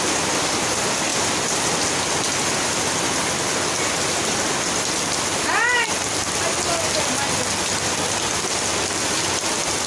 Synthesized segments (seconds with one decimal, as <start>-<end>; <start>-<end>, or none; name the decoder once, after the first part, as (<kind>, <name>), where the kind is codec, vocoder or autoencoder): none